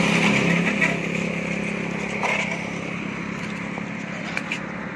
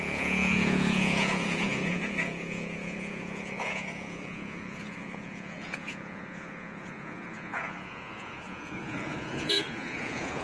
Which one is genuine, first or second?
first